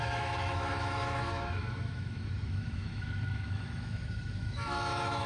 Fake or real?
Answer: fake